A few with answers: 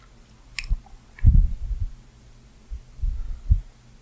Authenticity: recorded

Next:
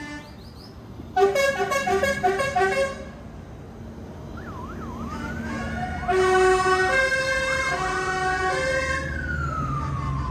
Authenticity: recorded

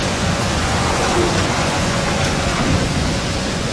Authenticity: remade